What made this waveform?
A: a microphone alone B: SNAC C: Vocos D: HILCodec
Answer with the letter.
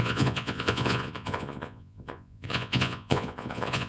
C